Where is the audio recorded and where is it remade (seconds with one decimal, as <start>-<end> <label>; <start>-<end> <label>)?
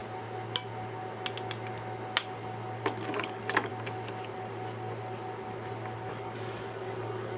0.0-3.2 recorded; 3.2-3.7 remade; 3.7-6.1 recorded; 6.1-7.4 remade